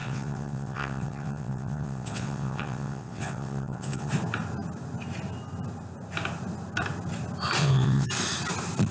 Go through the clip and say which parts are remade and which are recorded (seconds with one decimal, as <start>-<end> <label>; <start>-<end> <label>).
0.0-4.1 remade; 4.1-7.6 recorded; 7.6-8.1 remade; 8.1-8.9 recorded